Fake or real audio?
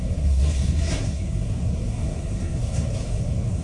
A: fake